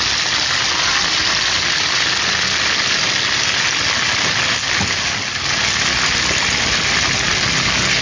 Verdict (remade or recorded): recorded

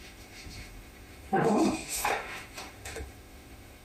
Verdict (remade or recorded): remade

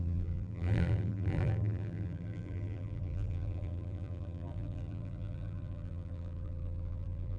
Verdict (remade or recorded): remade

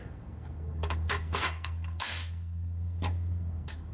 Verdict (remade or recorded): remade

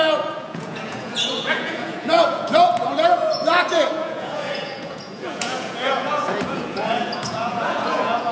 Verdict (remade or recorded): remade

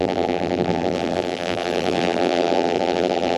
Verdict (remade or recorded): remade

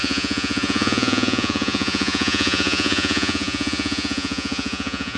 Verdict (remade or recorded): remade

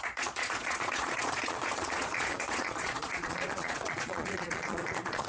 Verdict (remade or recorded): remade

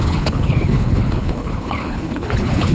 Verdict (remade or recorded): remade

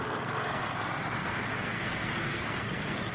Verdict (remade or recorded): remade